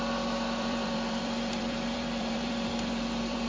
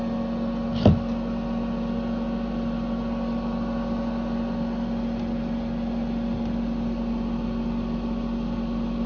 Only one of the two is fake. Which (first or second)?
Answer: first